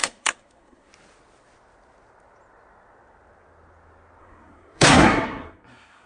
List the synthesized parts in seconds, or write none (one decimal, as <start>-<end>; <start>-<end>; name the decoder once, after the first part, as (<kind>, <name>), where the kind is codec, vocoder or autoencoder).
0.0-0.9 (codec, SNAC); 4.2-6.1